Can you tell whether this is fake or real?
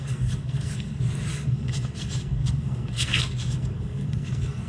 fake